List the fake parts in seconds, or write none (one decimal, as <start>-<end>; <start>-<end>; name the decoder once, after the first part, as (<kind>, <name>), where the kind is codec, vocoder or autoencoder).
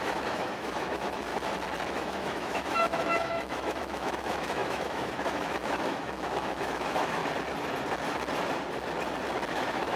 0.0-1.3 (autoencoder, DAC-VAE); 1.9-7.2; 9.5-10.0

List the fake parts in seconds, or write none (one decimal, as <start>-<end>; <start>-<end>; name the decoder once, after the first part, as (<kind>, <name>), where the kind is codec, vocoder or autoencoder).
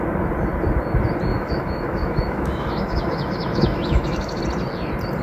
1.3-4.4 (autoencoder, DAC-VAE)